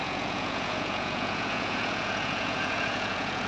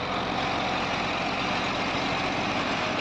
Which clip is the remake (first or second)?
first